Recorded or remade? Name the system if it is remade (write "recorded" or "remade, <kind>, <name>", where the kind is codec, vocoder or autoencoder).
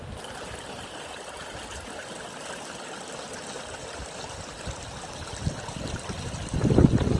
recorded